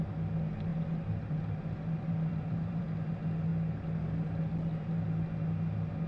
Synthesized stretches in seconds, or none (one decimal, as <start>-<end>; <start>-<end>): 0.7-2.8